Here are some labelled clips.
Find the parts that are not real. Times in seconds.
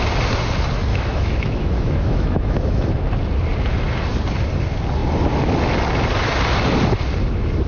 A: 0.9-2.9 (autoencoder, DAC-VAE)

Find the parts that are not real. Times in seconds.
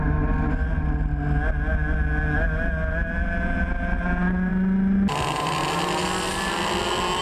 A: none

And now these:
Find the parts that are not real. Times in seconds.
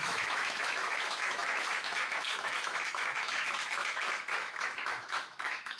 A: 0.0-5.8 (autoencoder, DAC-VAE)